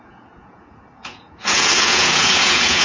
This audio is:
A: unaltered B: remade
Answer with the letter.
B